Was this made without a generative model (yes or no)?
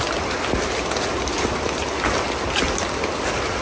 yes